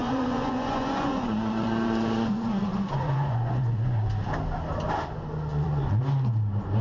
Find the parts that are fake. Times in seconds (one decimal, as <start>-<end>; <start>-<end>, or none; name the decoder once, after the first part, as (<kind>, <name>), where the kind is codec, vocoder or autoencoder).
0.0-4.1 (vocoder, Vocos); 5.5-6.0